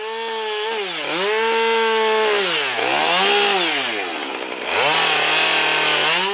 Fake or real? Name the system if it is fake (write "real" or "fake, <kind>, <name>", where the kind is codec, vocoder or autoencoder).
real